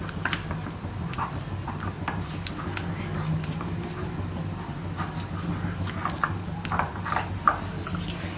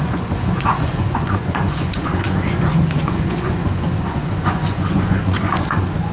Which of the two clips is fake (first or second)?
second